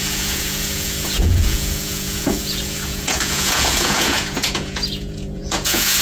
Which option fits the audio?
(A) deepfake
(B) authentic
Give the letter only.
A